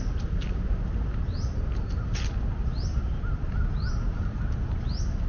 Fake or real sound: real